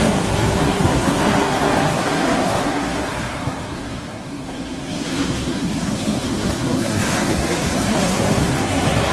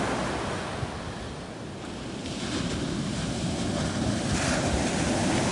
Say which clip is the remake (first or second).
first